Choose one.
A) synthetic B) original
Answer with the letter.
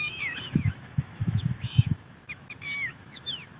A